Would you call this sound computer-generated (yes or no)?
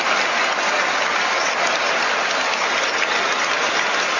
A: no